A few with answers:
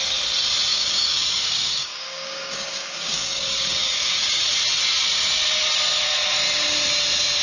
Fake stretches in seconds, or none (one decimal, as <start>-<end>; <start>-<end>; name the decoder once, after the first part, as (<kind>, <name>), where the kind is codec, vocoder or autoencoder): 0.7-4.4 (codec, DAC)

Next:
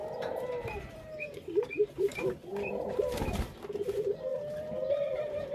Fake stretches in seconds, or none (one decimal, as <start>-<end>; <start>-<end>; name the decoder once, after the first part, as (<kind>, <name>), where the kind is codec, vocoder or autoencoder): 0.9-5.5 (vocoder, BigVGAN v2)

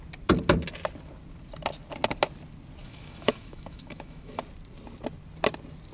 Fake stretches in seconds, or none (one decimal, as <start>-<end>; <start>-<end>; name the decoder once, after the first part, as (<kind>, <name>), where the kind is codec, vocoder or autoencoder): 2.8-4.4 (autoencoder, DAC-VAE)

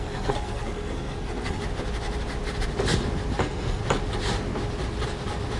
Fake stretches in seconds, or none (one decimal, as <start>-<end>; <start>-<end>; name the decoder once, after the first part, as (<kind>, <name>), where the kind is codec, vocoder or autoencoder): 0.0-1.6 (codec, SNAC); 3.4-3.8

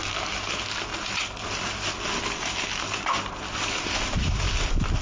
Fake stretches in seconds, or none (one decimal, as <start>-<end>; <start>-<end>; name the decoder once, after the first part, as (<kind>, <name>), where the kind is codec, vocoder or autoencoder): none

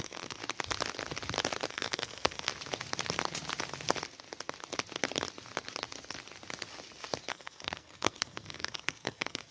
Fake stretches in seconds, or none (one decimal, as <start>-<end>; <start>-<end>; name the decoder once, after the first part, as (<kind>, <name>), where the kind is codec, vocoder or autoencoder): 0.0-0.4 (codec, SNAC); 1.7-2.5; 7.3-9.5